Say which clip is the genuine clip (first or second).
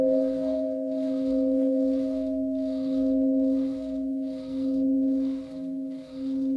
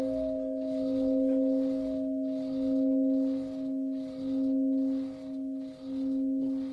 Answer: second